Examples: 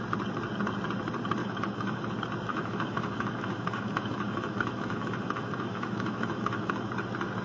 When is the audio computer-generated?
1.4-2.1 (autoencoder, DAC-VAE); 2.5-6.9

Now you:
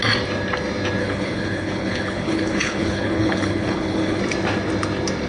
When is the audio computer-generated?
1.0-4.2 (codec, HILCodec)

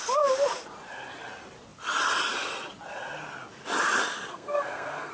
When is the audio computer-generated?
4.3-5.1 (codec, SNAC)

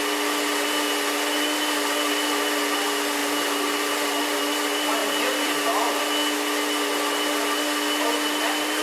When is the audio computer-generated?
5.0-6.0 (vocoder, BigVGAN v2)

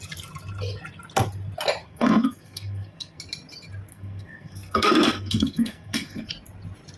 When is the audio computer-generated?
1.8-3.2 (codec, SNAC); 3.9-6.3

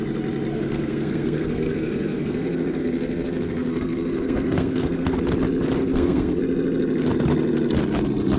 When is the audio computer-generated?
0.5-5.2 (codec, SNAC); 5.8-6.4

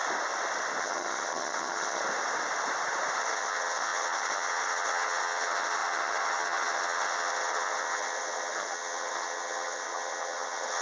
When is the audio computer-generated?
0.8-2.0 (vocoder, HiFi-GAN); 3.2-10.8